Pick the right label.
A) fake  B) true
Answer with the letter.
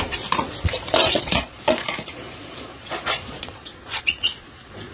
A